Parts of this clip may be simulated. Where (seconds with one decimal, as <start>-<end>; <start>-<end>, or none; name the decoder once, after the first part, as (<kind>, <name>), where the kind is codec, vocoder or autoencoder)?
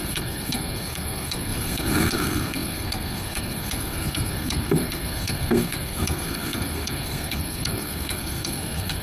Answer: 0.0-9.0 (codec, SNAC)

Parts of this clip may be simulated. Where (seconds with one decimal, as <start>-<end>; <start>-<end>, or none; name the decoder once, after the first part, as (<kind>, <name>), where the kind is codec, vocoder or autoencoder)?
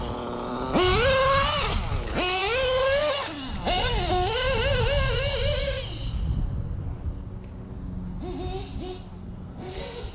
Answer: 9.2-10.1 (codec, SNAC)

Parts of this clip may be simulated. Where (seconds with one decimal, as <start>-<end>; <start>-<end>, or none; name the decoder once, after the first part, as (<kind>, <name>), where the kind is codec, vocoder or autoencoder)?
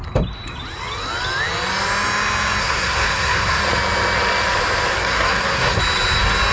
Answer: 2.6-3.6 (codec, SNAC); 4.9-5.8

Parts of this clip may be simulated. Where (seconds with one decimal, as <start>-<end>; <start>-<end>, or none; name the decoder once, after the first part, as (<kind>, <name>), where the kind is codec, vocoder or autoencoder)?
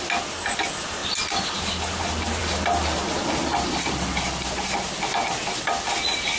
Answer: none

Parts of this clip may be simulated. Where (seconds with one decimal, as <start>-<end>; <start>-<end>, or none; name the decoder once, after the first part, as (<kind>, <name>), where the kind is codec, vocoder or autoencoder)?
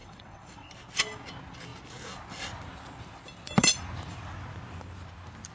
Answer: 0.0-0.7 (vocoder, WaveNeXt)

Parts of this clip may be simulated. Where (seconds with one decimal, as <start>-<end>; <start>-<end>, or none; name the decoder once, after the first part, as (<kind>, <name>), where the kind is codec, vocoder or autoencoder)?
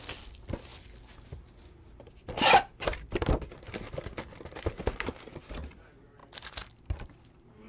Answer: none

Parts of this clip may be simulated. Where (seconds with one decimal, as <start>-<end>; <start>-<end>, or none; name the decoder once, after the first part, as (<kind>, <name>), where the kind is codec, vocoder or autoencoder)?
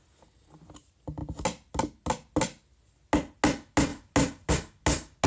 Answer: none